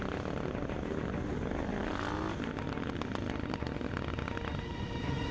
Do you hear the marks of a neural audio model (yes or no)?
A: no